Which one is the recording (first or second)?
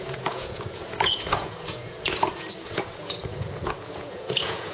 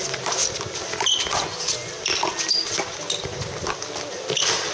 second